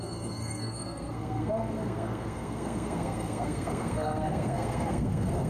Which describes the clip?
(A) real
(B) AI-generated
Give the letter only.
B